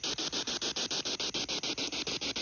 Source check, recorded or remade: recorded